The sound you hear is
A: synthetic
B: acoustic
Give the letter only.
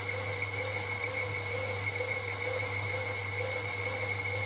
B